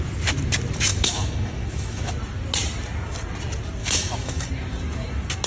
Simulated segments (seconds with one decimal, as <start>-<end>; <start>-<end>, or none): 0.9-2.1; 3.8-4.5